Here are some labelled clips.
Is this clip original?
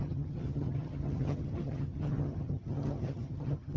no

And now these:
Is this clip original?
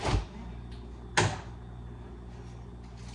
yes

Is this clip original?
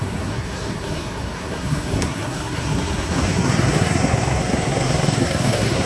no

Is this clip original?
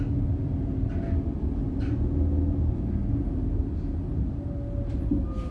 yes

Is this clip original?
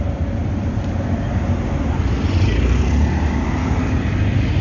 yes